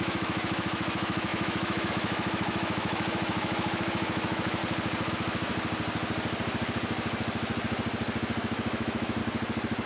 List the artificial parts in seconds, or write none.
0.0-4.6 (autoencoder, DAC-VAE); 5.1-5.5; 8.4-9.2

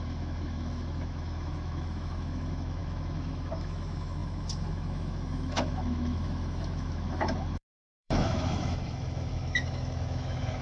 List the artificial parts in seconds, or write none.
0.0-10.6 (autoencoder, DAC-VAE)

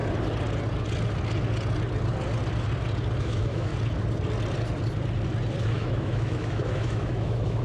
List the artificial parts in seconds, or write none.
3.2-3.7 (autoencoder, DAC-VAE); 5.6-7.6

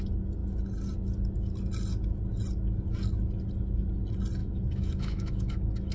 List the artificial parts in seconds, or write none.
4.4-5.9 (autoencoder, DAC-VAE)

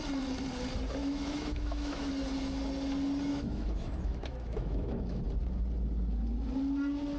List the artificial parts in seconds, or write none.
1.0-2.1 (autoencoder, DAC-VAE); 3.3-5.2

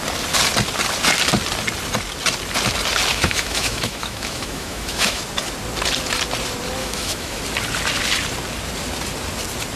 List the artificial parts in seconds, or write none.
3.1-5.2 (autoencoder, DAC-VAE); 6.8-7.4

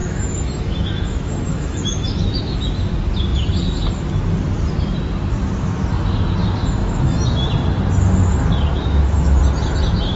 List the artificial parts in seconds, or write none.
0.0-2.9 (autoencoder, DAC-VAE); 6.8-7.5; 8.7-9.4

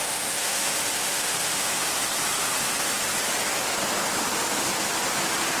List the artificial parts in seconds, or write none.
0.0-1.9 (autoencoder, DAC-VAE)